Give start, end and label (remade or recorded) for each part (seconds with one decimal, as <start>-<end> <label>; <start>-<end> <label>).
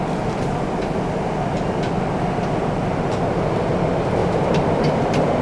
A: 0.0-4.2 recorded; 4.2-5.4 remade